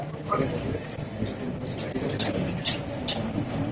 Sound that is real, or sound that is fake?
real